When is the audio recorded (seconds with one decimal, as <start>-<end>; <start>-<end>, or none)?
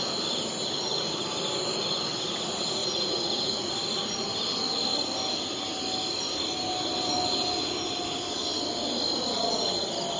0.0-2.8; 3.7-10.2